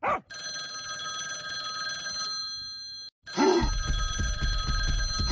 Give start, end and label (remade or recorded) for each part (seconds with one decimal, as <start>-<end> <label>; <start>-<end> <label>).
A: 0.0-5.3 recorded